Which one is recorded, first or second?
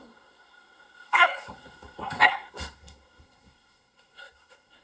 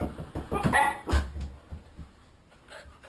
second